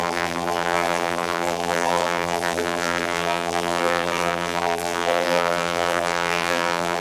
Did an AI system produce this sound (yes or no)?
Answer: yes